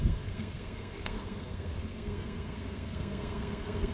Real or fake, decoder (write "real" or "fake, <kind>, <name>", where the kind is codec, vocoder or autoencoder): fake, codec, SNAC